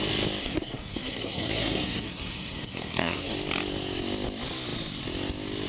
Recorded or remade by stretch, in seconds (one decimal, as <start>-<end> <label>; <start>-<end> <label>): 0.0-0.4 recorded; 0.4-3.3 remade; 3.3-5.7 recorded